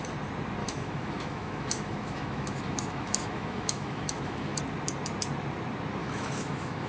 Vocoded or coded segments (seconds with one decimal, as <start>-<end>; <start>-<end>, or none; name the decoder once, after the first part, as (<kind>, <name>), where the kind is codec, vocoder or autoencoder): 0.6-4.6 (autoencoder, DAC-VAE); 6.0-6.9